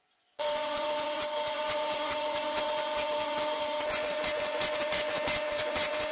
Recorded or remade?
remade